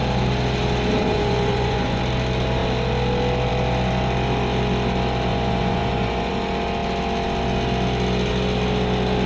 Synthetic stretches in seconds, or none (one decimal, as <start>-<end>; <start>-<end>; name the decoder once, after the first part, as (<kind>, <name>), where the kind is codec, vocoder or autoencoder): 1.0-2.0 (vocoder, Vocos); 5.3-6.3